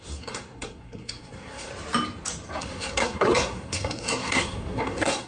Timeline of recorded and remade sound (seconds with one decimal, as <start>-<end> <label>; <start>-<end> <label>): 0.0-1.7 remade; 1.7-2.6 recorded; 2.6-5.3 remade